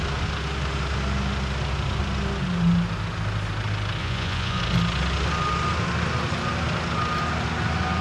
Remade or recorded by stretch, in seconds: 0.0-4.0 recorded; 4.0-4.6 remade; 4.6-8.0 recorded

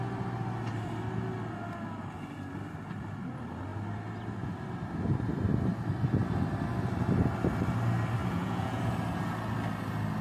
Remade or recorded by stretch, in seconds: 0.0-8.2 recorded; 8.2-8.8 remade; 8.8-10.2 recorded

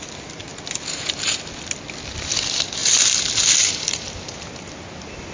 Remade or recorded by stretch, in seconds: 0.0-5.3 recorded

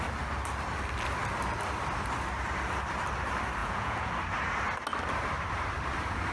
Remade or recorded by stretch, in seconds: 0.0-3.6 recorded; 3.6-4.1 remade; 4.1-6.3 recorded

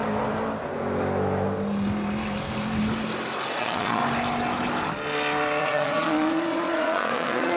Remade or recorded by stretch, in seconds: 0.0-3.5 recorded; 3.5-4.0 remade; 4.0-5.6 recorded; 5.6-7.6 remade